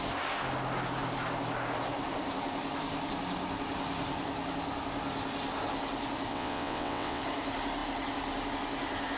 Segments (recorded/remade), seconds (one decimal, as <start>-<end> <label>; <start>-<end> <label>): 0.0-6.3 recorded; 6.3-7.2 remade; 7.2-9.2 recorded

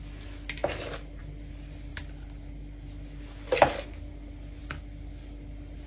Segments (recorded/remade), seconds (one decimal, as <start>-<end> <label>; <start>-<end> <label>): 0.0-5.9 recorded

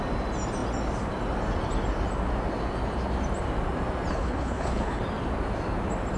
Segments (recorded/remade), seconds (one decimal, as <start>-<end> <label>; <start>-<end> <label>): 0.0-4.1 recorded; 4.1-5.0 remade; 5.0-6.2 recorded

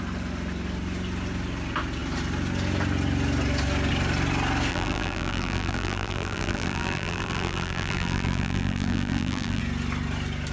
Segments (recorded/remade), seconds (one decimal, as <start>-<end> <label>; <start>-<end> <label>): 0.0-4.7 recorded; 4.7-9.6 remade; 9.6-10.5 recorded

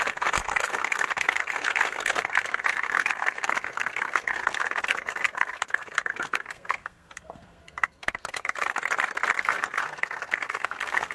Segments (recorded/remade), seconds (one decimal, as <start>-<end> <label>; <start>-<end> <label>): 0.0-8.7 remade; 8.7-9.4 recorded; 9.4-11.1 remade

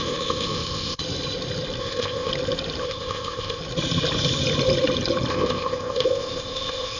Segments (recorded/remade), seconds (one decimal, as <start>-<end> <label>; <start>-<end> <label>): 0.0-1.0 remade; 1.0-1.8 recorded; 1.8-2.3 remade; 2.3-2.8 recorded; 2.8-3.6 remade; 3.6-5.3 recorded; 5.3-7.0 remade

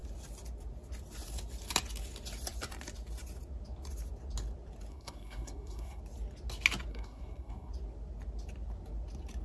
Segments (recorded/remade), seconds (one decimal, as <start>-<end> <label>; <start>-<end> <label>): 0.0-4.9 recorded; 4.9-6.0 remade; 6.0-6.9 recorded; 6.9-7.7 remade; 7.7-9.4 recorded